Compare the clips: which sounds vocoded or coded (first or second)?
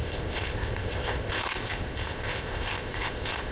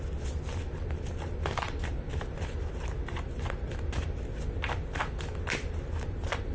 first